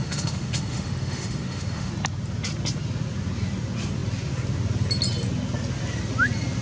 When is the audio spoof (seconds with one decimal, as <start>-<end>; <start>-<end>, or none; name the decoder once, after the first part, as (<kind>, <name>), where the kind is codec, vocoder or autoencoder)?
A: 0.0-1.9 (autoencoder, DAC-VAE)